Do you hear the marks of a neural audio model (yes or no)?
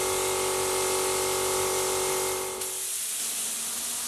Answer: no